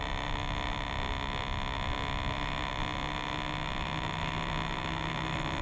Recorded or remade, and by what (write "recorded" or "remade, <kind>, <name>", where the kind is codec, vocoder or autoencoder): recorded